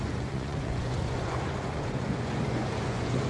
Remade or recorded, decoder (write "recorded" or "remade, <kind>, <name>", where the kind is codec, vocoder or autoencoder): remade, vocoder, Vocos